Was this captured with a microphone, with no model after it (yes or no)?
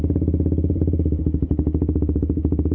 yes